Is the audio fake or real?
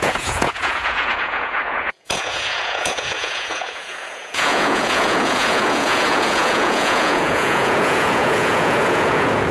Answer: fake